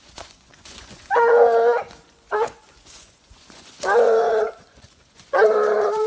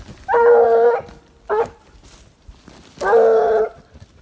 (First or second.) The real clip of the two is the second